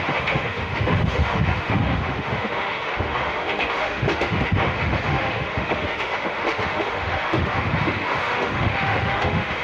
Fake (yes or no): yes